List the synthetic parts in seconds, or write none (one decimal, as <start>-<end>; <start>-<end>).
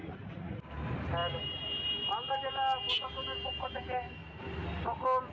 0.0-0.6